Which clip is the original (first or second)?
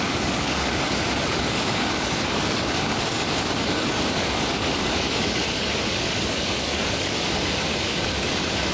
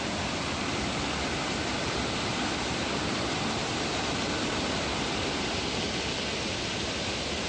second